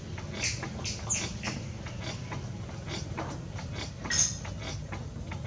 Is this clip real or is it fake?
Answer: real